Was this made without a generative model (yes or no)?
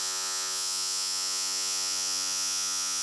no